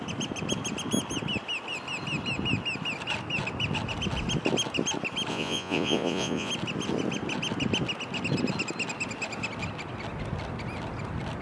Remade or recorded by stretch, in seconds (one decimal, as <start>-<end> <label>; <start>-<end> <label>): 0.0-5.3 recorded; 5.3-6.5 remade; 6.5-11.4 recorded